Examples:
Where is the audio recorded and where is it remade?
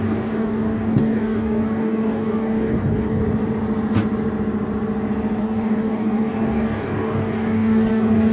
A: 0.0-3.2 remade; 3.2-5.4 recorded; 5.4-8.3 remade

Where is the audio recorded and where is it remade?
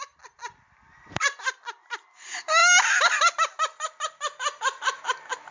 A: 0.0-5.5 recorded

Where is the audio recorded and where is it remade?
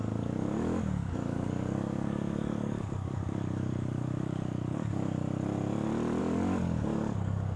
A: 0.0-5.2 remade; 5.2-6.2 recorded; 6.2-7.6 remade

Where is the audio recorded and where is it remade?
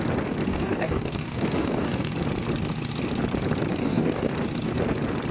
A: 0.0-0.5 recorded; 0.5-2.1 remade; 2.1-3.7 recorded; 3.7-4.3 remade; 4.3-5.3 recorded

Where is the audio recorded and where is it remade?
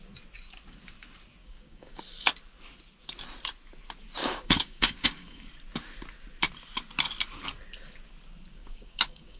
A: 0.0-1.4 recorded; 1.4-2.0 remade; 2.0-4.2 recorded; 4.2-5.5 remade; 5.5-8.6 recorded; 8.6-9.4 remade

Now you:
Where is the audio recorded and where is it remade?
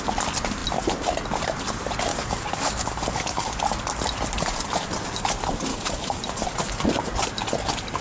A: 0.0-2.1 recorded; 2.1-3.6 remade; 3.6-5.7 recorded; 5.7-6.2 remade; 6.2-8.0 recorded